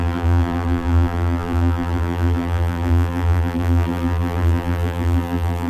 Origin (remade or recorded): remade